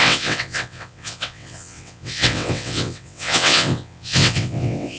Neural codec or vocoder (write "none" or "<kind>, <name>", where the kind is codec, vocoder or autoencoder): vocoder, WaveNeXt